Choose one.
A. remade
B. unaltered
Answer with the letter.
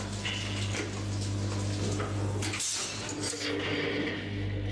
B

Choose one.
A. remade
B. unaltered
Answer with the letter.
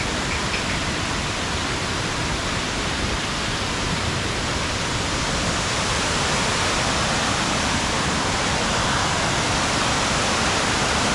A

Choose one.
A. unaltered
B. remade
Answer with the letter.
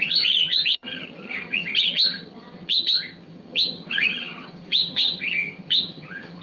B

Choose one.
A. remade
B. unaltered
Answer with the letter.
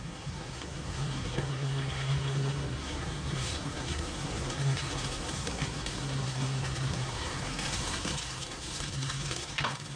A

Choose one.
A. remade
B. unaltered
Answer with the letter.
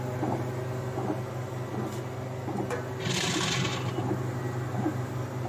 B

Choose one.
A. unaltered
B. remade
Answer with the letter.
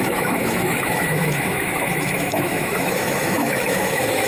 B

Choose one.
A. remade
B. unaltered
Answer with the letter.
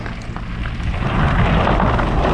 B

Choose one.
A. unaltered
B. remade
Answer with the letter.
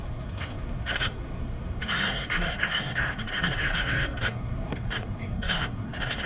B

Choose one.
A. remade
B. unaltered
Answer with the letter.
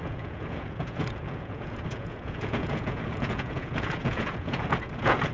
A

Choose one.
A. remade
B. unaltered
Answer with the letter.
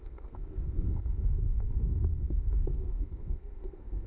A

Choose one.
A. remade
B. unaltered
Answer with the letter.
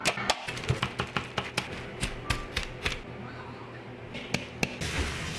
B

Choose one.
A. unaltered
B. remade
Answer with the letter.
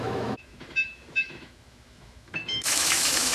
B